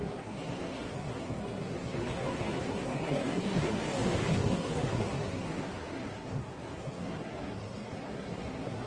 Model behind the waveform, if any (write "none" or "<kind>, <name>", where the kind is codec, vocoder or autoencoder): codec, SNAC